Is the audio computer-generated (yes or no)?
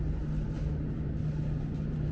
no